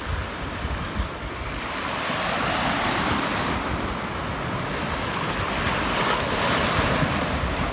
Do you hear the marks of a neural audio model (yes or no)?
no